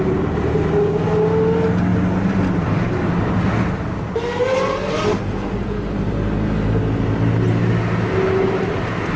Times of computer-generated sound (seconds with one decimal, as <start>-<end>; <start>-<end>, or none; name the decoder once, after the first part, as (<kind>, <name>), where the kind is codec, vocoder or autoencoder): none